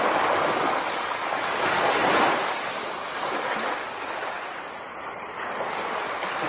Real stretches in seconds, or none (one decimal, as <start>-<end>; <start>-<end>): 0.0-6.5